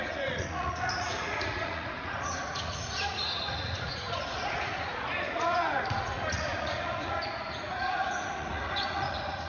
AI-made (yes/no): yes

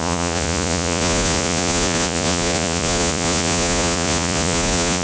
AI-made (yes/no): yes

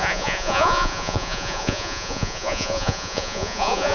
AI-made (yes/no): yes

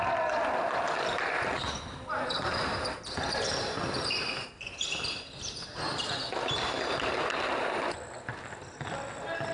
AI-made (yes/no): no